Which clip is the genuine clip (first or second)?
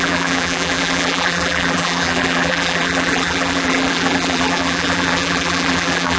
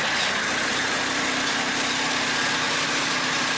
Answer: second